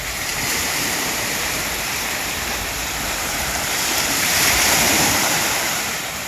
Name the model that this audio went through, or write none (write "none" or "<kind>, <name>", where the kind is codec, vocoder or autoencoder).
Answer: vocoder, BigVGAN v2